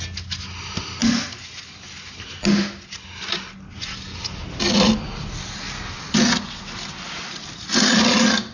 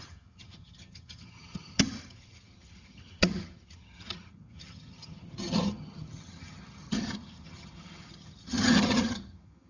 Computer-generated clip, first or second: second